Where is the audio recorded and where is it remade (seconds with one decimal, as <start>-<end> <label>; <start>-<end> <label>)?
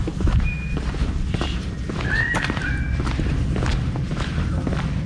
0.0-3.7 recorded; 3.7-4.6 remade; 4.6-5.1 recorded